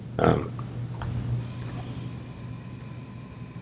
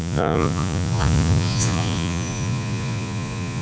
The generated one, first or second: second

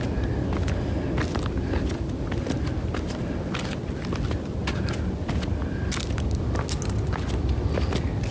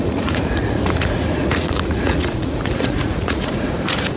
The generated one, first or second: second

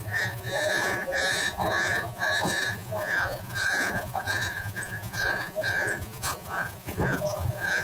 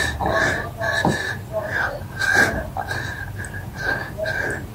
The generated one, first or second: first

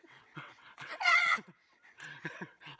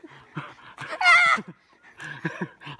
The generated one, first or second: first